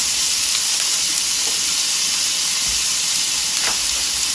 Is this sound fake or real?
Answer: real